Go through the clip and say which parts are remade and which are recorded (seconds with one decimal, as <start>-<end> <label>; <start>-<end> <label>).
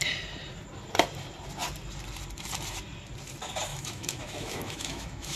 0.0-3.7 recorded; 3.7-5.4 remade